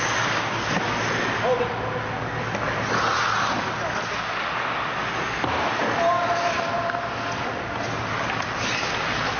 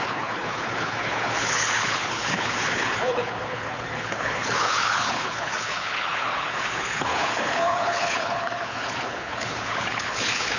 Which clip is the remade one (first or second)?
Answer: second